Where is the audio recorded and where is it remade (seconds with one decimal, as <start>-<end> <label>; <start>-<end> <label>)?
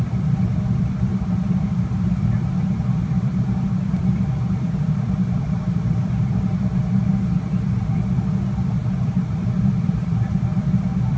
0.0-1.1 recorded; 1.1-6.1 remade; 6.1-8.8 recorded; 8.8-10.6 remade; 10.6-11.2 recorded